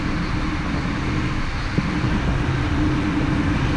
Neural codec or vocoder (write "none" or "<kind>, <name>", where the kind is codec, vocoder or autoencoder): none